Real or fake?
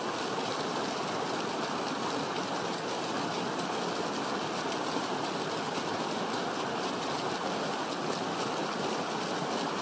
real